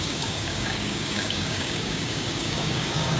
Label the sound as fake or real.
fake